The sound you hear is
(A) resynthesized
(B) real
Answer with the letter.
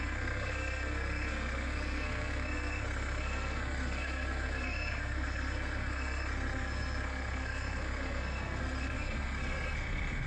A